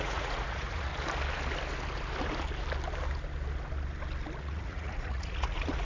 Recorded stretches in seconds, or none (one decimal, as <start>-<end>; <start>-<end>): 0.9-4.4

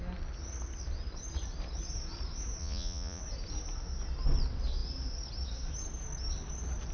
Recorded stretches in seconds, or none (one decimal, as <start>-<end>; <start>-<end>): 0.0-2.6; 3.2-6.9

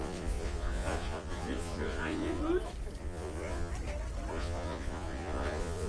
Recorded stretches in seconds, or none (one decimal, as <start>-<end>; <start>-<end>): 2.4-3.0; 3.7-4.3

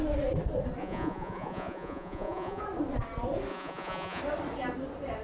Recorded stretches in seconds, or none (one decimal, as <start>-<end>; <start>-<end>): 0.0-0.8; 2.6-3.5; 4.2-5.2